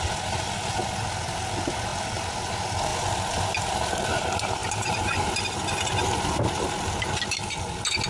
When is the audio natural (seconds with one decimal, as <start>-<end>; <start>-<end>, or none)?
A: 0.0-8.1